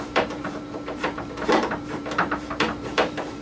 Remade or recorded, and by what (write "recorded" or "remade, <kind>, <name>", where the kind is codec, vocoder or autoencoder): remade, vocoder, BigVGAN v2